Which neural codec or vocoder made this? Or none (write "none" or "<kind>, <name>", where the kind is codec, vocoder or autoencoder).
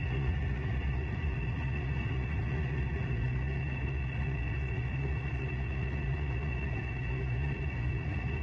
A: vocoder, Vocos